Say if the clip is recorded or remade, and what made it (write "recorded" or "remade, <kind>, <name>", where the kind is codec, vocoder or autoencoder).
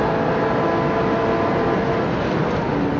recorded